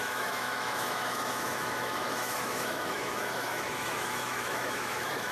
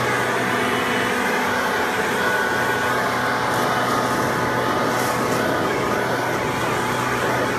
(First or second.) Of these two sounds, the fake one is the first